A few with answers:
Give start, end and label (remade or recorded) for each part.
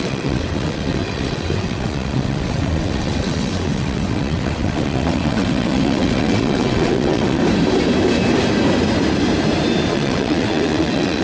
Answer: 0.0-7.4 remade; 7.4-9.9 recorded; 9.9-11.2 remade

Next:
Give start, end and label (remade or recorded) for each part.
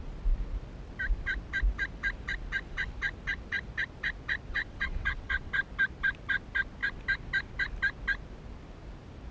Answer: 0.0-4.5 recorded; 4.5-5.5 remade; 5.5-9.3 recorded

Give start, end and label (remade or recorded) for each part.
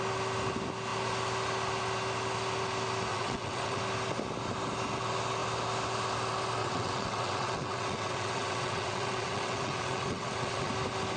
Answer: 0.0-3.1 recorded; 3.1-3.8 remade; 3.8-6.6 recorded; 6.6-10.7 remade; 10.7-11.2 recorded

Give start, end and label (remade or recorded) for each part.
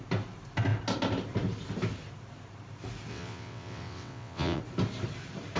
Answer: 0.0-3.1 recorded; 3.1-4.6 remade; 4.6-5.6 recorded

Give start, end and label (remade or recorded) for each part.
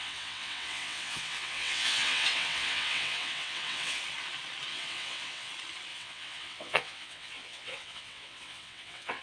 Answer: 0.0-4.0 remade; 4.0-4.7 recorded; 4.7-5.5 remade; 5.5-5.9 recorded; 5.9-9.2 remade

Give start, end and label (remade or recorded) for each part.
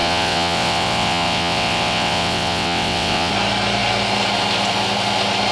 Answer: 0.0-3.3 remade; 3.3-5.5 recorded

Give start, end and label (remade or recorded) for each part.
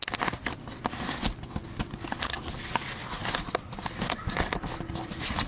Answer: 0.0-5.5 recorded